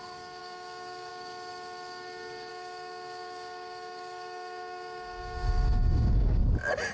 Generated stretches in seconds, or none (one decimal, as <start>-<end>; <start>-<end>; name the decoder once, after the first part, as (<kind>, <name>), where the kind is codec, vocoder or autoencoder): 0.4-1.1 (codec, DAC); 2.5-6.4